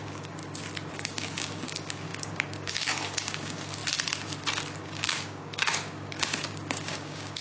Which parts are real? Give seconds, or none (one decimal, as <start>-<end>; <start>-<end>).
0.4-0.9; 3.8-4.8